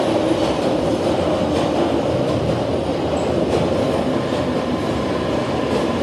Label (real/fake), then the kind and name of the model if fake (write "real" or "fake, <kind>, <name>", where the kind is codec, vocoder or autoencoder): real